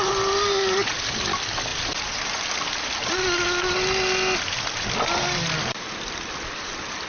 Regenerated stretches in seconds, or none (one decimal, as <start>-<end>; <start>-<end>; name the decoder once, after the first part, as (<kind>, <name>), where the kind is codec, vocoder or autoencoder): none